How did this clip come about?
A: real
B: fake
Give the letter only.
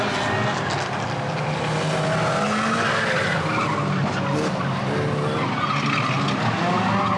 A